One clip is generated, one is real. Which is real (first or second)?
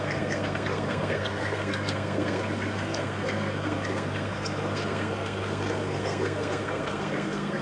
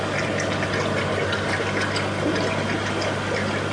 second